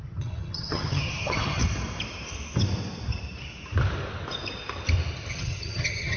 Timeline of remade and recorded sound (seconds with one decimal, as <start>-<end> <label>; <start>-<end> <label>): 0.0-1.6 remade; 1.6-5.3 recorded; 5.3-6.2 remade